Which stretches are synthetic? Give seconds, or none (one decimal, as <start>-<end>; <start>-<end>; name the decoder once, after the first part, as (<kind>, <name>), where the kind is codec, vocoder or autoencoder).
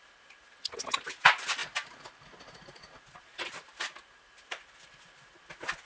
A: none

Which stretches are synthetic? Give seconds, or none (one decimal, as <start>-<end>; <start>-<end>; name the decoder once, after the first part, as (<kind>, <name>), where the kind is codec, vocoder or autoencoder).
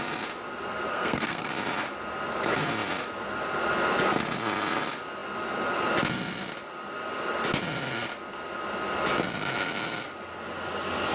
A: 0.9-1.5 (codec, SNAC)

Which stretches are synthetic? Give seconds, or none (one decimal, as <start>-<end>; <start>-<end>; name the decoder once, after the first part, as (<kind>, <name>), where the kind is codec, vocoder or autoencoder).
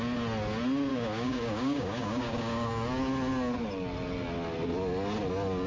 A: 0.9-2.7 (codec, DAC)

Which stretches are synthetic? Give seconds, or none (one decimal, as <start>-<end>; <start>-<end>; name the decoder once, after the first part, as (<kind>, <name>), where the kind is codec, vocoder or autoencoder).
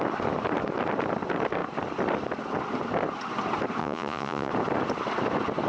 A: 3.8-4.5 (vocoder, Vocos)